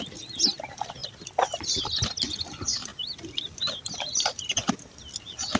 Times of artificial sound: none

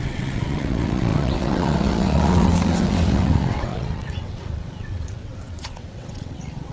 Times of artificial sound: 0.0-6.7 (vocoder, WaveNeXt)

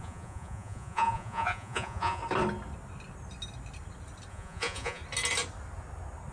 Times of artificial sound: 0.0-2.2 (vocoder, Vocos); 4.3-5.0

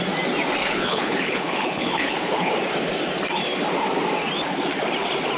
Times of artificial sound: 0.6-2.5 (codec, HILCodec)

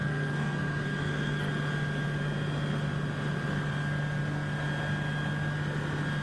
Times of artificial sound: 0.0-1.5 (codec, SNAC)

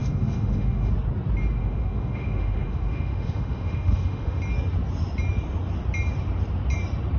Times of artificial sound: 0.0-0.9 (autoencoder, DAC-VAE); 1.6-4.4

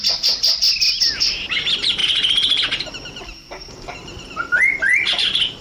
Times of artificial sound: none

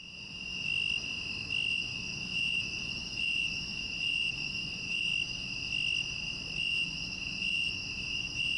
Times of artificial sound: 0.0-0.5 (vocoder, Vocos); 1.7-5.1; 6.6-8.6